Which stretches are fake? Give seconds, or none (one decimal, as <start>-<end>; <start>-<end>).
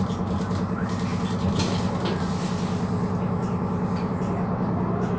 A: none